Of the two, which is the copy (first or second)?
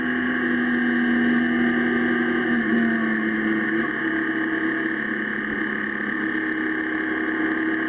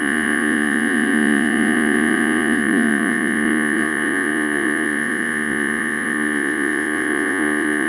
second